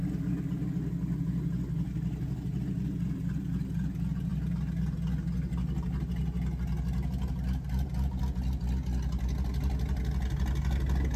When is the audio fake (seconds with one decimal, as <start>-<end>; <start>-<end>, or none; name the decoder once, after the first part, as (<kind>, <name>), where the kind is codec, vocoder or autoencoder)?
none